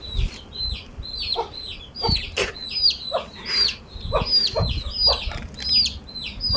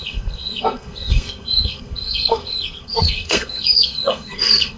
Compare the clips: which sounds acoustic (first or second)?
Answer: first